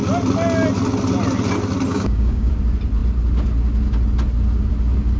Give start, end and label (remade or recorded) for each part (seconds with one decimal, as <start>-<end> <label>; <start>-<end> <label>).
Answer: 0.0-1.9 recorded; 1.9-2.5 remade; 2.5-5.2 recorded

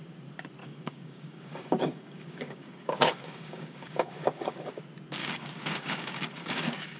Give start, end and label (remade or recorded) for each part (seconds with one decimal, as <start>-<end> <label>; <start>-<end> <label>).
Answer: 0.0-0.6 recorded; 0.6-4.8 remade; 4.8-5.2 recorded; 5.2-7.0 remade

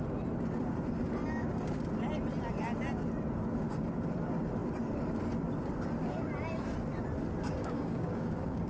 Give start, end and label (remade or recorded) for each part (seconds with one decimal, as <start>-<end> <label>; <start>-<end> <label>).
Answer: 0.0-7.6 recorded; 7.6-8.7 remade